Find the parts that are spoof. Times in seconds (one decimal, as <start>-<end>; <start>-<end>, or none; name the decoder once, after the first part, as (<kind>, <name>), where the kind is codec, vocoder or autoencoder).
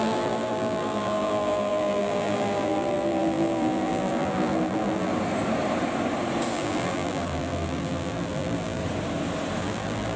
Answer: 0.0-5.1 (vocoder, BigVGAN v2); 6.5-8.8; 9.6-10.2